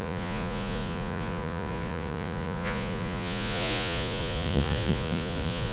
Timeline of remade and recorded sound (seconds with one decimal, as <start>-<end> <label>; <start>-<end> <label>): 0.0-5.7 remade